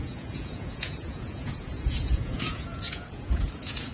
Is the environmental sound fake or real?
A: fake